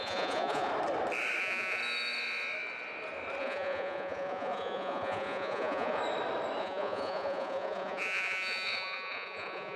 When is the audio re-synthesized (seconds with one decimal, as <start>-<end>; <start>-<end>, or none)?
0.0-0.7; 1.4-1.8; 3.4-6.0; 6.6-9.8